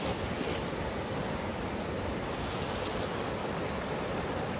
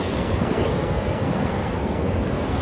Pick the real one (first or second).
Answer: first